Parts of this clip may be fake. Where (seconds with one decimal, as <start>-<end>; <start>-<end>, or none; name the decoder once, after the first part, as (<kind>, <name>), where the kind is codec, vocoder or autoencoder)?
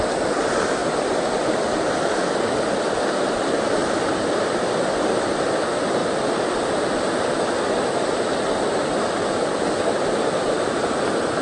0.8-4.6 (vocoder, BigVGAN v2); 6.0-6.5